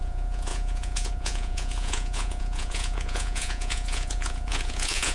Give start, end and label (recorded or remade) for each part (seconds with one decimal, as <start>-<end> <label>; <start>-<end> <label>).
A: 0.0-5.1 remade